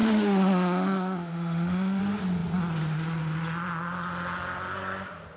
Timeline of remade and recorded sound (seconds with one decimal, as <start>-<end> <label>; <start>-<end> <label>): 0.0-2.0 remade; 2.0-5.4 recorded